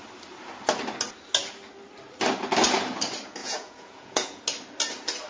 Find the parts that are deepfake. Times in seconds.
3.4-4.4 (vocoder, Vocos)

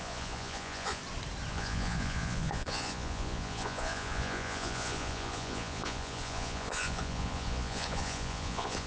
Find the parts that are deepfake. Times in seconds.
0.0-1.0 (vocoder, Vocos); 1.5-8.9

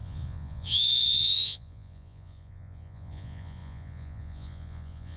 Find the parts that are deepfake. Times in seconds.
0.0-5.2 (vocoder, Vocos)

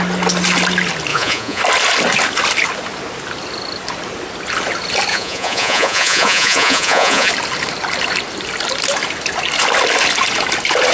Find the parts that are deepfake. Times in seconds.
1.1-1.6 (vocoder, Vocos); 5.1-7.3

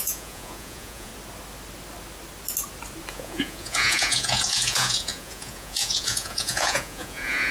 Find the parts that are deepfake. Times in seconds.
0.0-1.1 (vocoder, Vocos); 3.1-7.5

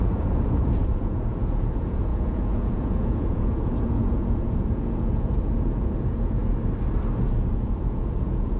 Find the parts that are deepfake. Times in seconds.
0.0-6.4 (vocoder, Vocos); 7.2-8.6